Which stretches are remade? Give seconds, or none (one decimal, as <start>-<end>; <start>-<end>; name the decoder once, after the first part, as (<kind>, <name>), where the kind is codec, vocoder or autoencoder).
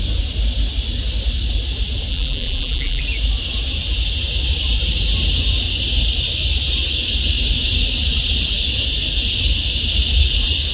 2.1-3.0 (vocoder, BigVGAN v2)